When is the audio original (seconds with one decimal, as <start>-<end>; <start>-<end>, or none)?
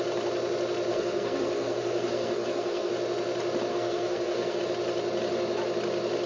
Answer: 0.0-0.9; 2.9-3.7; 4.6-6.3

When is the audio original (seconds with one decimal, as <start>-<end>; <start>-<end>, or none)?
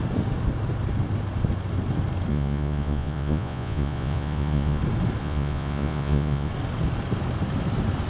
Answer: 0.0-2.3; 4.8-5.2; 6.5-8.1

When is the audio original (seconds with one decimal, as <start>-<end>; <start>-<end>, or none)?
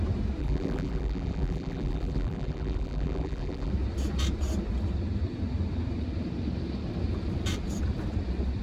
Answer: 0.0-0.4; 3.7-8.6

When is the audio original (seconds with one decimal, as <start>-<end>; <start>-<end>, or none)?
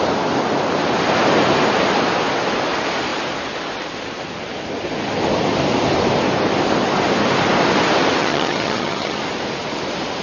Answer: 0.0-8.2; 9.2-10.2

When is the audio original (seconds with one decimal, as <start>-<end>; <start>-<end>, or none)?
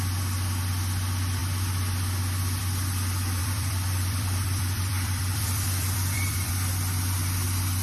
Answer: 0.0-3.4; 6.5-7.8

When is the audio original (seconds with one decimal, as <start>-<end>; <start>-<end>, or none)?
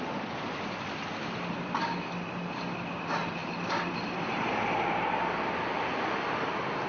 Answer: 0.0-6.9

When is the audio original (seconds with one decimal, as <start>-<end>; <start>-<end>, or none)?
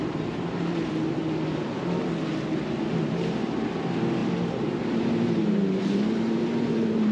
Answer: 1.2-3.1